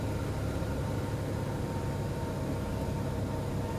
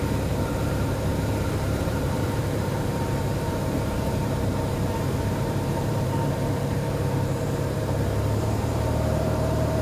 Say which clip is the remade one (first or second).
second